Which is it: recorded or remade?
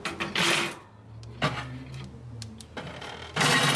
recorded